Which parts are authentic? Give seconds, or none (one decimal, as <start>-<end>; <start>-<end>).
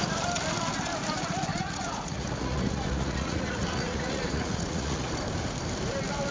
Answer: 0.0-1.5; 5.1-6.3